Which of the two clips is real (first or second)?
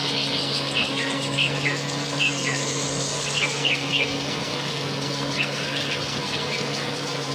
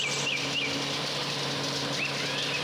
second